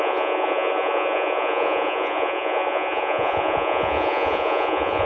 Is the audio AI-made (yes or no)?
yes